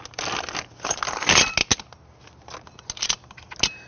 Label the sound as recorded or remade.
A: recorded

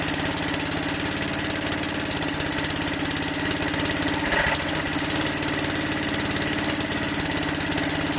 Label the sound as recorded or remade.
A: recorded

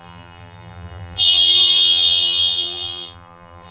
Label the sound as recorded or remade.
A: remade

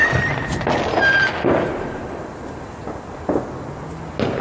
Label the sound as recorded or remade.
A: recorded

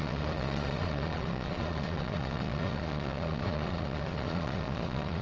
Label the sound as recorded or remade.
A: remade